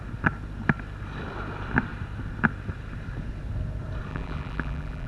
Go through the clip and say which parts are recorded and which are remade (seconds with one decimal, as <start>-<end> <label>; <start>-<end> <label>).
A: 0.0-4.1 recorded; 4.1-5.1 remade